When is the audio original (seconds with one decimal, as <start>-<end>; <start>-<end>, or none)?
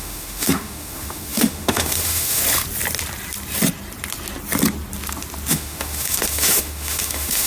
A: 2.4-5.5